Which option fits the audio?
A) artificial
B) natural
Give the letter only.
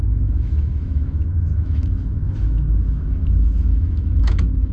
A